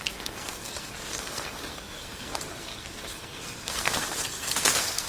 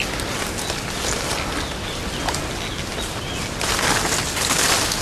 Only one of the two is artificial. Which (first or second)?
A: first